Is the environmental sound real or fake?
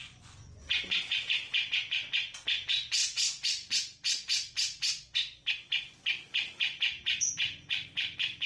fake